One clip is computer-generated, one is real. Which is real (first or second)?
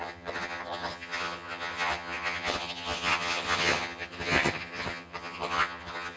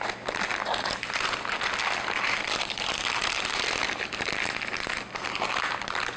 second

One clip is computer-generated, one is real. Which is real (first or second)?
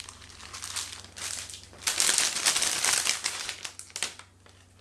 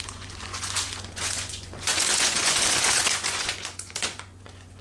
first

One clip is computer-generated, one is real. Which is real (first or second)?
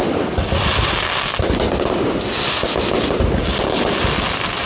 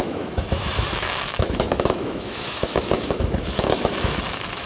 first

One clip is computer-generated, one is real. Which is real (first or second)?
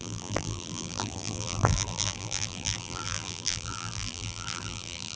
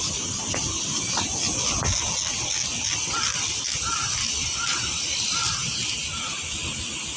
second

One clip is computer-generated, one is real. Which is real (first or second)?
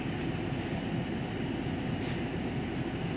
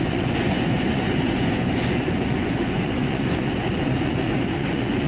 first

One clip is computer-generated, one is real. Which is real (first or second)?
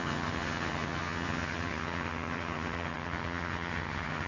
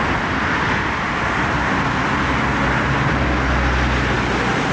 second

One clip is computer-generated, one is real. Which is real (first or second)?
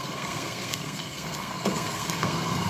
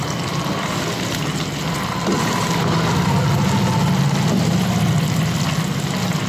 second